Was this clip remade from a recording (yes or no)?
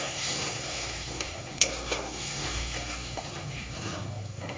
yes